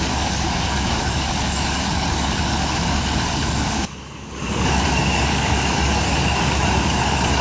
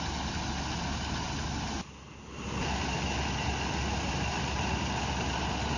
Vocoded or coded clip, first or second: first